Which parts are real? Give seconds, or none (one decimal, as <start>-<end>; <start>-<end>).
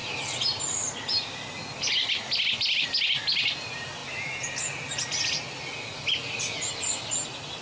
0.0-7.6